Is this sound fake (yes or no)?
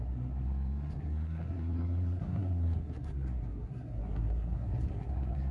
yes